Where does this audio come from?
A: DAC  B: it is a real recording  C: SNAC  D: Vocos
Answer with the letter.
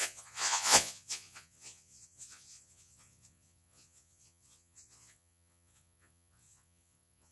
D